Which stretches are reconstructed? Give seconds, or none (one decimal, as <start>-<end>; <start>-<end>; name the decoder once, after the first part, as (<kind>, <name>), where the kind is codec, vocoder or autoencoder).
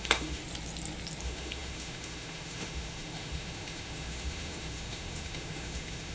0.0-0.4 (autoencoder, DAC-VAE); 1.2-6.1